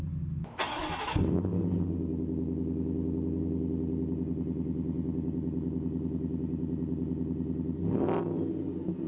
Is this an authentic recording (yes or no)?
yes